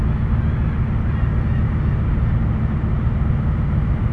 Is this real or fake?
real